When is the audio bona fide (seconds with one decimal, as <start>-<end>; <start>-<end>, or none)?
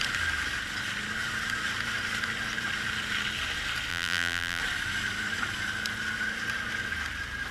0.0-3.9; 4.6-7.5